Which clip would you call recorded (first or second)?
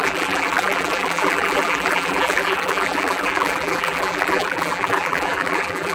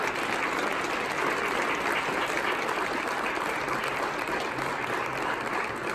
second